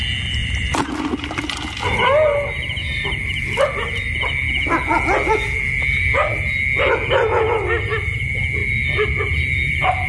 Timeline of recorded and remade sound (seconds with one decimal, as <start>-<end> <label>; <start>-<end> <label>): 0.0-0.4 recorded; 0.4-1.1 remade; 1.1-10.1 recorded